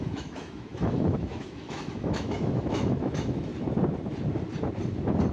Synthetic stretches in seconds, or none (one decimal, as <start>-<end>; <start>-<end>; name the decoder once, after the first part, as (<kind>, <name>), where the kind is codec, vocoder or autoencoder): 0.0-3.5 (autoencoder, DAC-VAE)